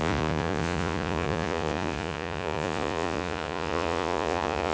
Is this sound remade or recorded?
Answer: remade